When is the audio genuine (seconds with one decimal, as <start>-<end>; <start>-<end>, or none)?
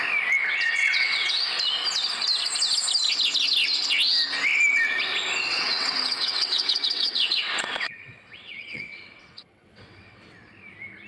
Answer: 0.0-0.4; 1.3-5.5; 10.5-11.1